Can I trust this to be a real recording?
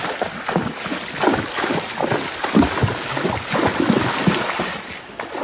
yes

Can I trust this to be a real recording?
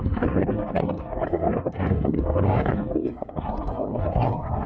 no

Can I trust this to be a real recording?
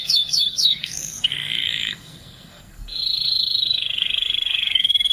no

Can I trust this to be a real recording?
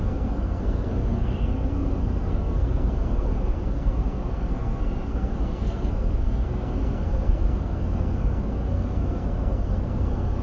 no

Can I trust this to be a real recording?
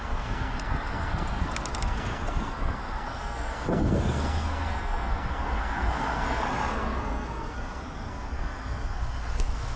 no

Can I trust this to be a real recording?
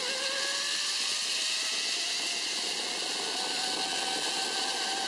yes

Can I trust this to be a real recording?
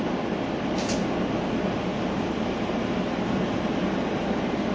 yes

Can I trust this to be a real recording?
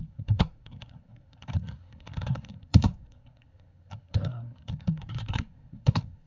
no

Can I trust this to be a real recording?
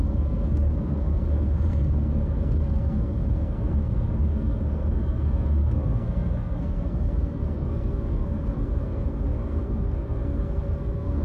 no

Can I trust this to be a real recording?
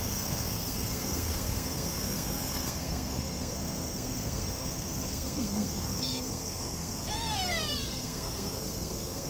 no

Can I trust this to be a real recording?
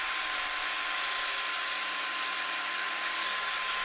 yes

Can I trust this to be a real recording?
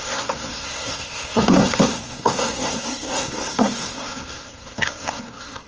no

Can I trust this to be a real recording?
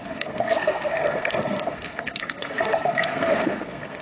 no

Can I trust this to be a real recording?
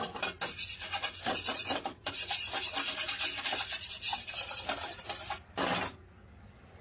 yes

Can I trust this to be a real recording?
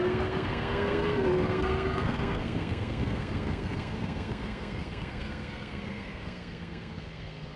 no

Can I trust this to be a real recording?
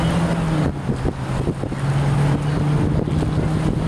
yes